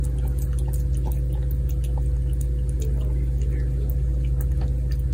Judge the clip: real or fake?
real